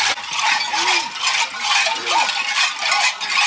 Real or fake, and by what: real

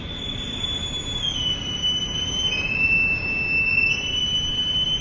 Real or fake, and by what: real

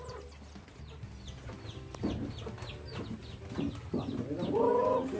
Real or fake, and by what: real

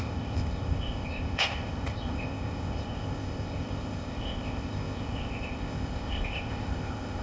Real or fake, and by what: fake, codec, ZipCodec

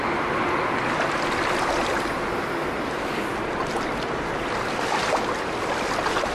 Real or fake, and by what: real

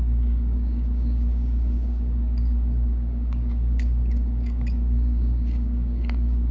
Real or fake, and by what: fake, codec, DAC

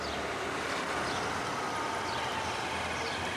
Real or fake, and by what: real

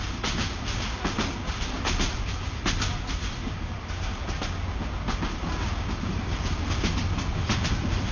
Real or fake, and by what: real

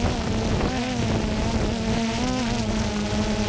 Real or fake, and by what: real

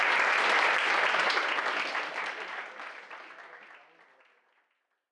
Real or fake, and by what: real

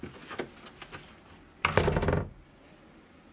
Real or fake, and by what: real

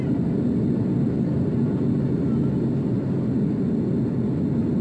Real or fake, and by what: real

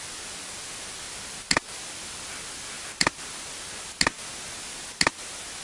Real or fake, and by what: real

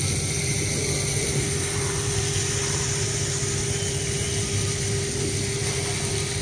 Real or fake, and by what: real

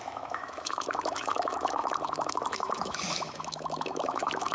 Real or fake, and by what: fake, autoencoder, DAC-VAE